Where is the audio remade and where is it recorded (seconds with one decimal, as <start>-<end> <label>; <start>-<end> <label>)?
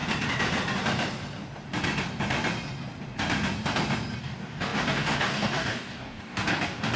0.0-4.2 recorded; 4.2-7.0 remade